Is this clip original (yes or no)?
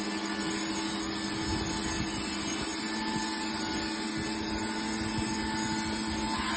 yes